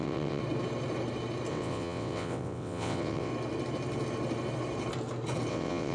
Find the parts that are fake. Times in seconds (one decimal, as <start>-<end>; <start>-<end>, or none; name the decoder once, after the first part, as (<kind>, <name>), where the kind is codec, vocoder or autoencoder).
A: 0.0-0.4 (vocoder, WaveNeXt); 1.5-3.3; 5.5-5.9